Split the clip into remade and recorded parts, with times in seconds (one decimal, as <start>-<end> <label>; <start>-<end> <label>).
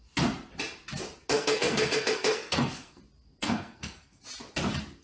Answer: 0.0-1.3 recorded; 1.3-3.0 remade; 3.0-3.4 recorded; 3.4-4.2 remade; 4.2-5.0 recorded